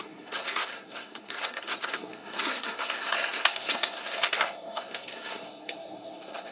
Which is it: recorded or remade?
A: remade